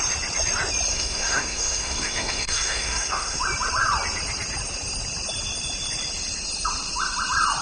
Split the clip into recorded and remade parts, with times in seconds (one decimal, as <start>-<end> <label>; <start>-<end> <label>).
0.0-0.9 recorded; 0.9-3.4 remade; 3.4-7.6 recorded